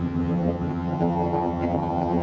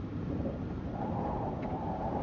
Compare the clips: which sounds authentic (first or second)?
second